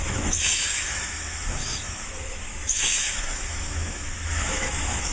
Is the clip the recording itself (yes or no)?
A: no